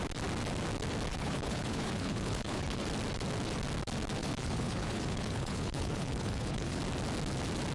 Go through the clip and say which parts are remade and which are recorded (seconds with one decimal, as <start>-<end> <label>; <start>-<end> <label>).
0.0-1.1 recorded; 1.1-2.8 remade; 2.8-4.2 recorded; 4.2-6.8 remade; 6.8-7.7 recorded